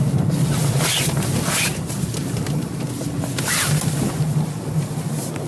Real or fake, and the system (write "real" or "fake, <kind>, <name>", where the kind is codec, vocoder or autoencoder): real